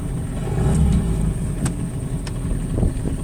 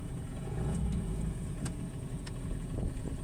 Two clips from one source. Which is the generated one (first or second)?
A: second